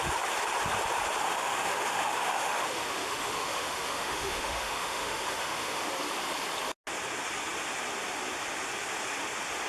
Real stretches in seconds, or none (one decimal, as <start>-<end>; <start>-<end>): 0.0-1.2; 5.9-9.7